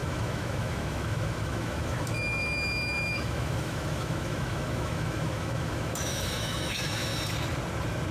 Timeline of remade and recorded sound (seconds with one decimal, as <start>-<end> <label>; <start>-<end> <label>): 0.0-7.1 remade; 7.1-8.1 recorded